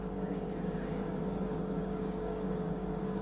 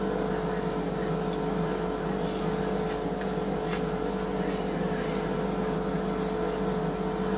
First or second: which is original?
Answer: second